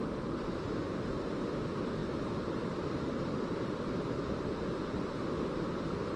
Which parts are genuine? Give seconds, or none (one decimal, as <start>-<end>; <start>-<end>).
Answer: 0.0-2.0; 5.0-6.2